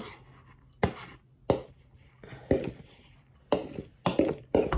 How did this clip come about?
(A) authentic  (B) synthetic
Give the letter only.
A